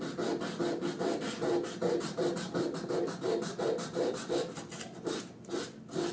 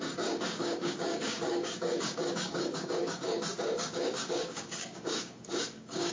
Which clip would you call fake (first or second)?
second